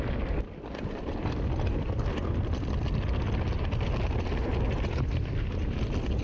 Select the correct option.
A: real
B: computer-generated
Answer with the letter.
A